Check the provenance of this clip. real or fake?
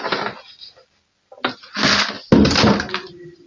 real